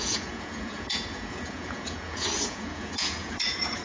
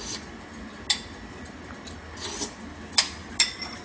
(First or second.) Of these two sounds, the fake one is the first